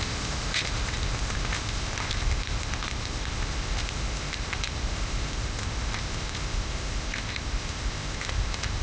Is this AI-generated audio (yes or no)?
yes